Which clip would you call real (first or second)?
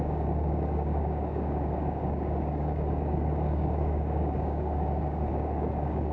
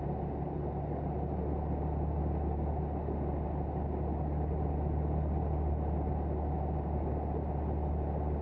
second